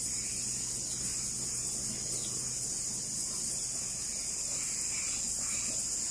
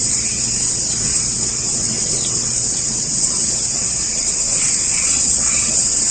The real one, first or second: first